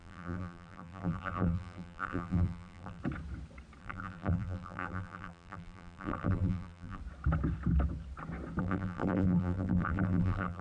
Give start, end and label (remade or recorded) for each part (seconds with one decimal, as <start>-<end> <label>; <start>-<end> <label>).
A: 0.0-3.0 remade; 3.0-3.8 recorded; 3.8-7.0 remade; 7.0-8.6 recorded; 8.6-10.6 remade